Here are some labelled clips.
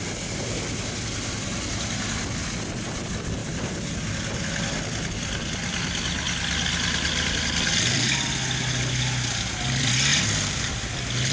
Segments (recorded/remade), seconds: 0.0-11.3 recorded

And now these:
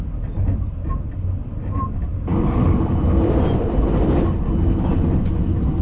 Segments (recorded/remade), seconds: 0.0-2.3 recorded; 2.3-3.4 remade; 3.4-5.8 recorded